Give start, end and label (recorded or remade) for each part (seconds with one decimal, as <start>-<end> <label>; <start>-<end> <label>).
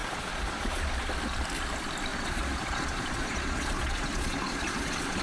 0.0-0.8 remade; 0.8-2.1 recorded; 2.1-5.2 remade